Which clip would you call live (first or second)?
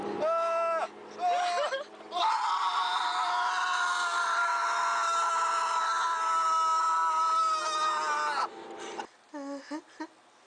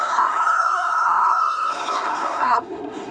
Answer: first